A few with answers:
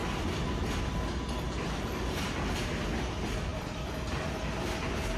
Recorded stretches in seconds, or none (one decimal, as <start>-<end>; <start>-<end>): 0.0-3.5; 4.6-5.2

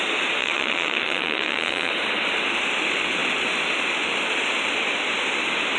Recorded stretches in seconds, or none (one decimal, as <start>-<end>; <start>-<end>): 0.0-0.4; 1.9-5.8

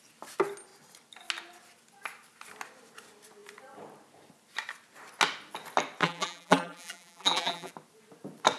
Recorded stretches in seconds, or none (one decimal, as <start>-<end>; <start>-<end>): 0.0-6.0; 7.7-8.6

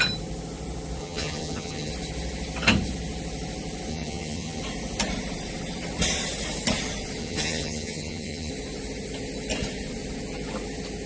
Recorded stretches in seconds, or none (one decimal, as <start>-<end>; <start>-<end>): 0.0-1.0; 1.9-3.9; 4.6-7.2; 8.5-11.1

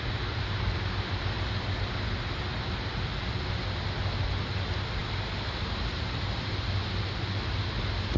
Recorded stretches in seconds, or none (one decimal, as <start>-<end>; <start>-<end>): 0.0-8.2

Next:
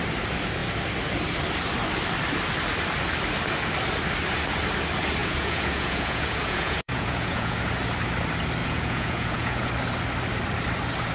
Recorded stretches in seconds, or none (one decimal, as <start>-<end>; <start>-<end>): 0.0-5.2; 7.6-8.6; 9.7-11.1

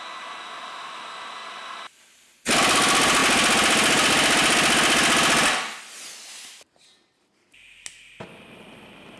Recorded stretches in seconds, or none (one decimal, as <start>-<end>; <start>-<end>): 0.0-1.4; 2.0-9.2

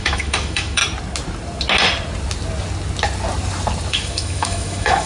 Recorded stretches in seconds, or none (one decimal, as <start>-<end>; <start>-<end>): 0.8-3.9